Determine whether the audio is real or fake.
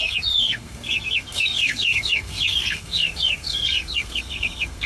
fake